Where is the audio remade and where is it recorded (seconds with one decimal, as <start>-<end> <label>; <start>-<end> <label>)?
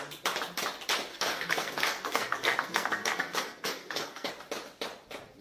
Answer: 0.0-1.1 recorded; 1.1-4.3 remade; 4.3-5.4 recorded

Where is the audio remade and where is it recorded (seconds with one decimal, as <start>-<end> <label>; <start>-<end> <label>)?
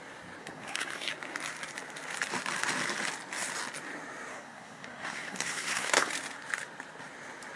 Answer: 0.0-0.4 recorded; 0.4-1.1 remade; 1.1-4.3 recorded; 4.3-6.1 remade; 6.1-7.6 recorded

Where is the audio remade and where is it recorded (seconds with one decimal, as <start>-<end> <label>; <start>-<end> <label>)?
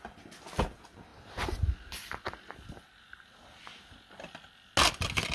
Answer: 0.0-5.3 recorded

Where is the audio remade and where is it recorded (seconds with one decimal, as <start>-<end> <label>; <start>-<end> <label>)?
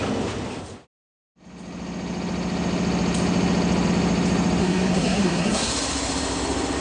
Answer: 0.0-4.6 recorded; 4.6-5.7 remade; 5.7-6.8 recorded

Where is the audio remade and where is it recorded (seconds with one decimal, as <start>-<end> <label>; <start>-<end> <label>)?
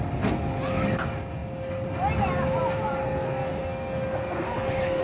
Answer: 0.0-3.0 recorded; 3.0-5.0 remade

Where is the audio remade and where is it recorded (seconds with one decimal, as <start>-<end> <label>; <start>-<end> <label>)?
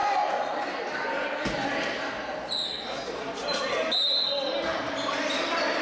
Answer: 0.0-5.8 recorded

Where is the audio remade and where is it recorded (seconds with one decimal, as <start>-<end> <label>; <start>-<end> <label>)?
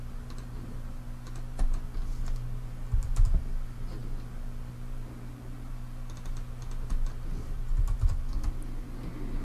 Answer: 0.0-9.4 recorded